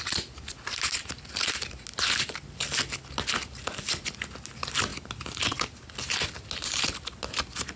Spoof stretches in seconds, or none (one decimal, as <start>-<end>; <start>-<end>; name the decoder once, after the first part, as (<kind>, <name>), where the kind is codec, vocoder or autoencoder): none